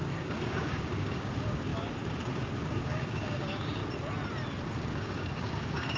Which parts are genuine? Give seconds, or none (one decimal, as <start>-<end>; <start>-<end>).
1.7-2.6; 3.8-4.7